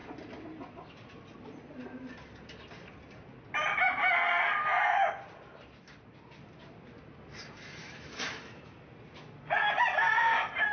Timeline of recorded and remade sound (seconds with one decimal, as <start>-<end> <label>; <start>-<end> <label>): 0.0-7.8 recorded; 7.8-8.6 remade; 8.6-10.7 recorded